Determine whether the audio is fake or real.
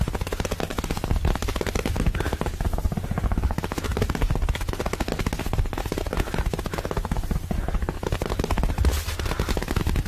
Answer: real